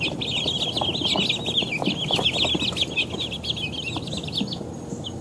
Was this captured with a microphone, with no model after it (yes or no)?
yes